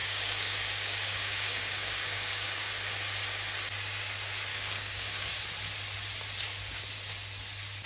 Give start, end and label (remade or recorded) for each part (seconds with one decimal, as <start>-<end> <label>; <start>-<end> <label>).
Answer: 0.0-2.7 remade; 2.7-4.5 recorded; 4.5-5.4 remade; 5.4-7.9 recorded